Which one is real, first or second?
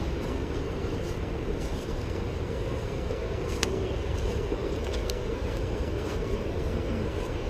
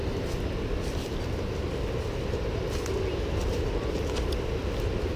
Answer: second